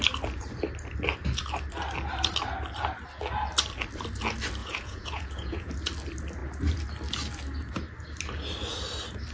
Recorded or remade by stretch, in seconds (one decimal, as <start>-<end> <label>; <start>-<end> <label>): 0.0-4.6 recorded; 4.6-5.7 remade; 5.7-9.3 recorded